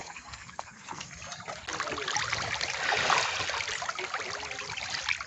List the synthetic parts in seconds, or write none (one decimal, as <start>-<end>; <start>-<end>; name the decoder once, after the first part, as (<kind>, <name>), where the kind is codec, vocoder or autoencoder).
0.0-1.1 (codec, SNAC)